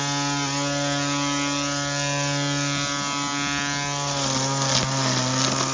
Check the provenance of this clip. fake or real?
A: real